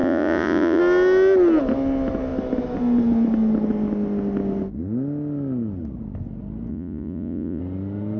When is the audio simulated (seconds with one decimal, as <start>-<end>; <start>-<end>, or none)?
0.0-0.8; 6.7-7.6